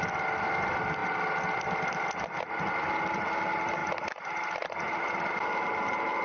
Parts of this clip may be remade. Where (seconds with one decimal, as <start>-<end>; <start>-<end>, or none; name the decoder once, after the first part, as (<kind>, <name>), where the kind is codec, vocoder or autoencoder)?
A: none